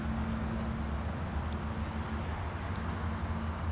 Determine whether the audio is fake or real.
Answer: real